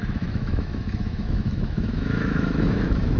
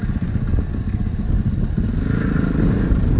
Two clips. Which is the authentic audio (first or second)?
second